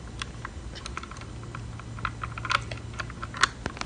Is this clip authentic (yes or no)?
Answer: yes